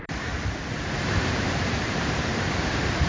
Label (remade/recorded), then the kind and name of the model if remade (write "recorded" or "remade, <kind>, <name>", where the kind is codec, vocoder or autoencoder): remade, vocoder, BigVGAN v2